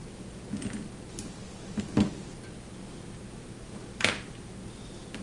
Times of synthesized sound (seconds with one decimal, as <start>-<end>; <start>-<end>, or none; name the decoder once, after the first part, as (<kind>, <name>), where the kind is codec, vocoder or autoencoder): none